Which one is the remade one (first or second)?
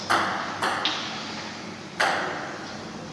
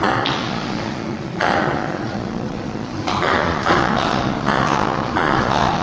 second